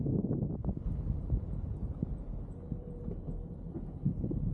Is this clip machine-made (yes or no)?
yes